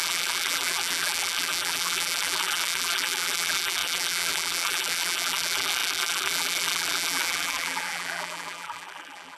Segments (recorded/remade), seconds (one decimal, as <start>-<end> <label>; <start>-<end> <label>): 0.0-9.4 remade